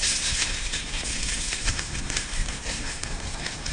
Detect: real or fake fake